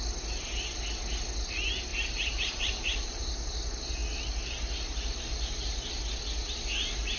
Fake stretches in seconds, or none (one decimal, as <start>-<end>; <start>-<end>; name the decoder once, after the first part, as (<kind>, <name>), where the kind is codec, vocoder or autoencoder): 1.9-3.2 (vocoder, BigVGAN v2)